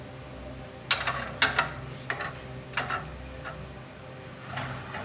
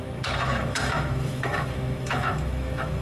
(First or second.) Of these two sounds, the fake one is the second